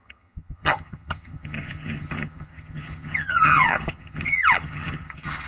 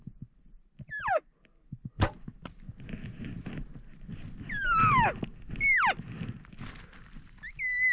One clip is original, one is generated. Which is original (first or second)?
second